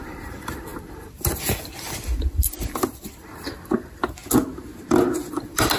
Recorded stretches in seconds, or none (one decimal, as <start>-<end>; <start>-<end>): 4.2-5.3